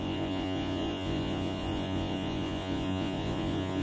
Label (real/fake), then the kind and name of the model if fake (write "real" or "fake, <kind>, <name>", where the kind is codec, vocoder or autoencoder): fake, vocoder, Vocos